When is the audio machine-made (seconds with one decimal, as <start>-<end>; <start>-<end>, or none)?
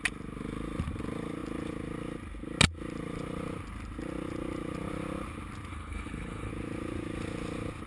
5.7-6.5